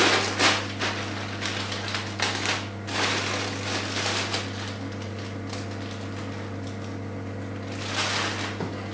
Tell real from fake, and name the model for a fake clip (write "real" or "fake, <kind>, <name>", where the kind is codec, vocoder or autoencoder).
real